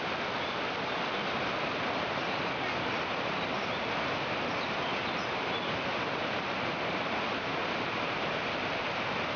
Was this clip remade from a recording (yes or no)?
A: no